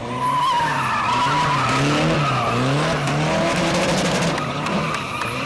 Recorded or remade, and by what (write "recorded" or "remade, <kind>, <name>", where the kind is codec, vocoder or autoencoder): recorded